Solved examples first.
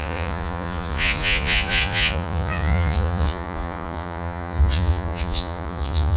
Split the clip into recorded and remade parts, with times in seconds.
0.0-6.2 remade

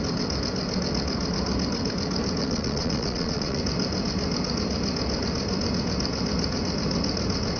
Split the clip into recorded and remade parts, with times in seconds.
0.0-2.4 recorded; 2.4-3.6 remade; 3.6-7.6 recorded

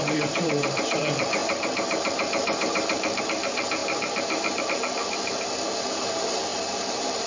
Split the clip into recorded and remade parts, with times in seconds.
0.0-7.3 remade

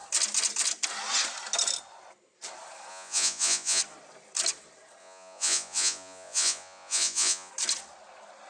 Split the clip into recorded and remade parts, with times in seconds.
0.0-2.9 recorded; 2.9-3.8 remade; 3.8-5.0 recorded; 5.0-7.5 remade; 7.5-8.5 recorded

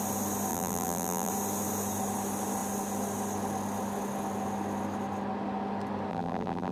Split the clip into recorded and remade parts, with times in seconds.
0.0-0.5 recorded; 0.5-1.3 remade; 1.3-6.1 recorded; 6.1-6.7 remade

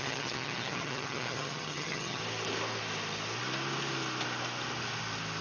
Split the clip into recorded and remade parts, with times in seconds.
0.0-2.2 remade; 2.2-5.4 recorded